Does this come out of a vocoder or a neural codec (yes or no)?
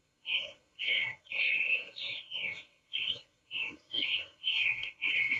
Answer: yes